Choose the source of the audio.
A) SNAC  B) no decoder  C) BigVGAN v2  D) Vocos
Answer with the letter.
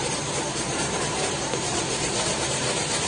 C